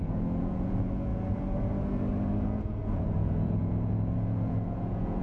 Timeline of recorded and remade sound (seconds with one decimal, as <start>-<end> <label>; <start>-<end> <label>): 0.0-1.1 remade; 1.1-2.3 recorded; 2.3-5.2 remade